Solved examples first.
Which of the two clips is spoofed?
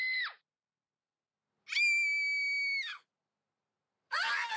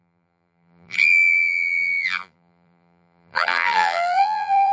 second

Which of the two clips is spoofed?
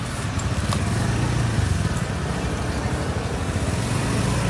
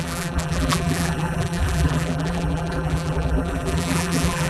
second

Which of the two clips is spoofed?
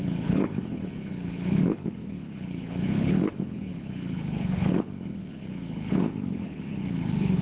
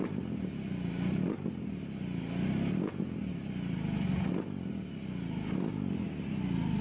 first